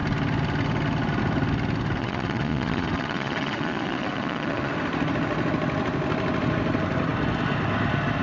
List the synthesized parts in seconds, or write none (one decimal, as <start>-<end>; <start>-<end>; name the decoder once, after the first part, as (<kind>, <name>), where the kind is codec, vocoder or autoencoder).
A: 2.0-4.7 (vocoder, Vocos)